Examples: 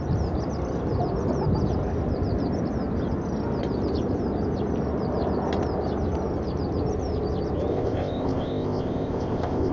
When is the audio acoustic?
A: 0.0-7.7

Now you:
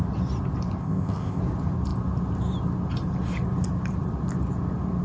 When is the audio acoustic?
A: 0.0-0.8; 1.4-5.0